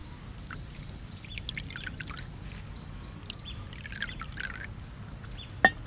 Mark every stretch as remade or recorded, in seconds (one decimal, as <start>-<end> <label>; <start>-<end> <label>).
0.0-5.9 recorded